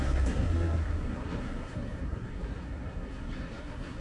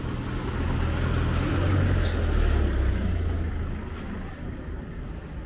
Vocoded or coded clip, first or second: first